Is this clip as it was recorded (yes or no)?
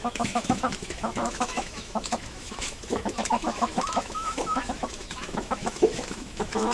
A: no